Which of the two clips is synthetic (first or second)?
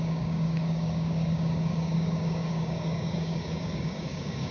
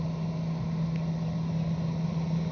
first